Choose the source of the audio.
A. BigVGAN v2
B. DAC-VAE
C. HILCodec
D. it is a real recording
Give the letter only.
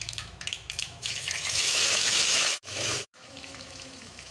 B